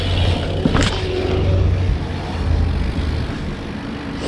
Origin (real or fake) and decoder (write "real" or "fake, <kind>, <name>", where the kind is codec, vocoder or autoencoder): real